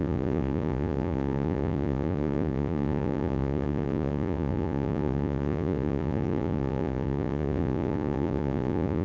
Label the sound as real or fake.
fake